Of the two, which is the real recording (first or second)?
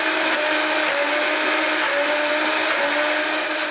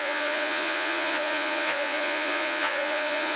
first